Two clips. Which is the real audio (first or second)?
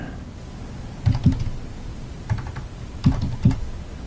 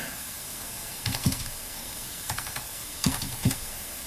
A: first